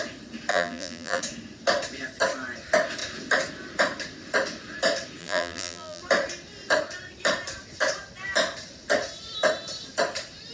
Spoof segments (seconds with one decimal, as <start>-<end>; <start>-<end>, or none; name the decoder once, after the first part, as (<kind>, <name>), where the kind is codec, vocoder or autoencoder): 0.5-1.2 (vocoder, BigVGAN v2); 5.2-6.0

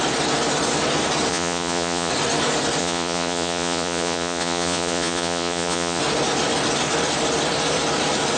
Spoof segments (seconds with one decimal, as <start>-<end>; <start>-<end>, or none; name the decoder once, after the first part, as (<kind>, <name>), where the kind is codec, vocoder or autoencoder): 1.3-2.1 (vocoder, Vocos); 2.8-6.0

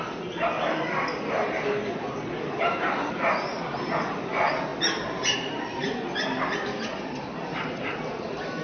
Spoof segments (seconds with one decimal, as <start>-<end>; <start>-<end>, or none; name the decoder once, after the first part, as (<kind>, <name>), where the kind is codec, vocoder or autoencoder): none

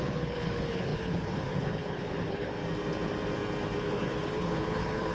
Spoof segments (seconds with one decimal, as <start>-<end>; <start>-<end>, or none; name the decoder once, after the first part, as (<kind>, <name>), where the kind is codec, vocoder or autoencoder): 0.0-2.6 (codec, HILCodec); 3.8-5.1

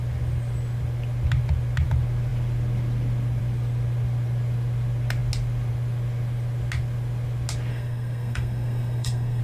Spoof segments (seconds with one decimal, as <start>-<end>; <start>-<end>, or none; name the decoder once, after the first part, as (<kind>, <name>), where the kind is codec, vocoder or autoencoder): 7.7-9.4 (codec, SNAC)

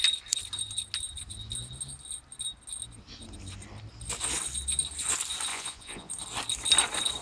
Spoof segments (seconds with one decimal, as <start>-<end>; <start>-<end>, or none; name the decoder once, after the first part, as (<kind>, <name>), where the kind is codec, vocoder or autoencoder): 5.5-6.1 (vocoder, Vocos)

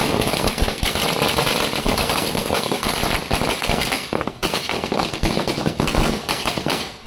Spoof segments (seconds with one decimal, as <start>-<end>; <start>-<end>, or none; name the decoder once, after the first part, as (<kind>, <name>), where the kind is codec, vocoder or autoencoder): 0.0-1.0 (codec, SNAC); 1.8-3.0; 3.6-7.1

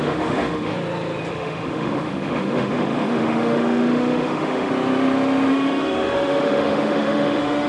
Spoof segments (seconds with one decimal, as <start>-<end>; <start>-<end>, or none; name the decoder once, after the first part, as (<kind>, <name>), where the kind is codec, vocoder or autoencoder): 0.0-0.7 (autoencoder, DAC-VAE); 1.3-4.7; 5.5-7.7